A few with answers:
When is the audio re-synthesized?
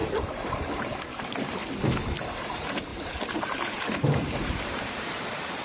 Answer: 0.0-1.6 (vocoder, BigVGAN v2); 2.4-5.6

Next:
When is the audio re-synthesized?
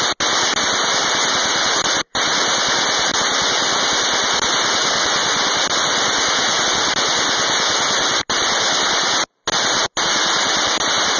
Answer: none